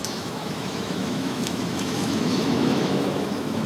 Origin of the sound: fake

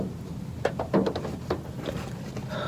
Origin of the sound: real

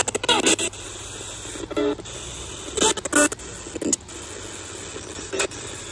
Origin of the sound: real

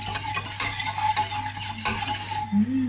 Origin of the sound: real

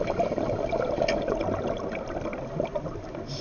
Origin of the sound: real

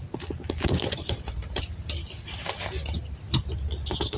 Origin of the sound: real